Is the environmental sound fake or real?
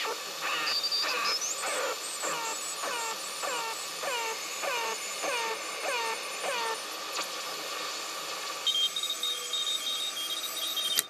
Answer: real